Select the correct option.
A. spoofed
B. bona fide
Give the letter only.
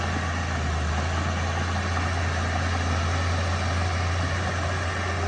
B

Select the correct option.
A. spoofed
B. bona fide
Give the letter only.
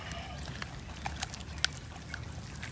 B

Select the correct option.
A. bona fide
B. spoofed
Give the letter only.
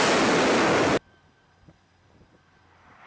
A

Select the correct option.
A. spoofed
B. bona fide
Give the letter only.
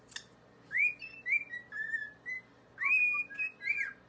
B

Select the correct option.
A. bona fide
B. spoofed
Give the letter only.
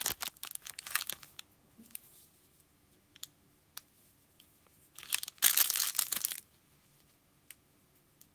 B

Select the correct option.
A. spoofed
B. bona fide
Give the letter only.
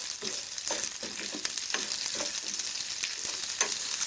B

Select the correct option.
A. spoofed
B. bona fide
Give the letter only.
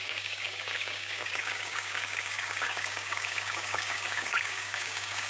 A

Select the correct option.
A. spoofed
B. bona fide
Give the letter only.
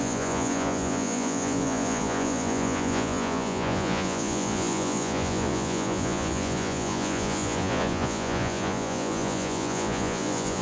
A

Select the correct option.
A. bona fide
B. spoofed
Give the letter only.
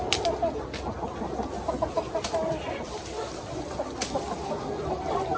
A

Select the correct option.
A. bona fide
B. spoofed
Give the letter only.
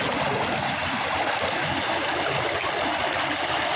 A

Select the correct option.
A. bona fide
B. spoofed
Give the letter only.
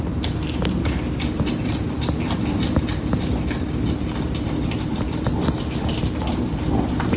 A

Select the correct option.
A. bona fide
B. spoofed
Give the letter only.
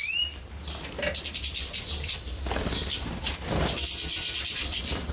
A